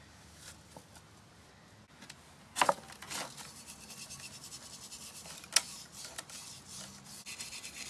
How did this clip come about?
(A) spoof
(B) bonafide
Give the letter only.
B